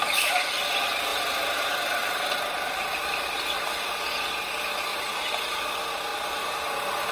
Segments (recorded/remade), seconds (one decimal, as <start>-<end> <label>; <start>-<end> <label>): 0.0-4.9 recorded; 4.9-5.5 remade; 5.5-7.1 recorded